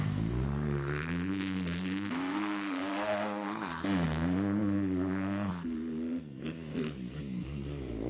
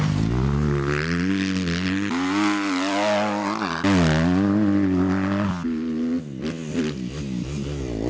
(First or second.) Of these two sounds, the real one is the second